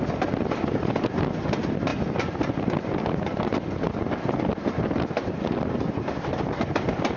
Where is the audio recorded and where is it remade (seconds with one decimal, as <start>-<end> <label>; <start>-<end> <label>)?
0.0-7.2 recorded